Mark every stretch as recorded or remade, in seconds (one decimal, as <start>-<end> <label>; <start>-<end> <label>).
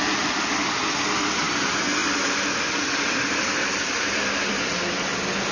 0.0-5.5 recorded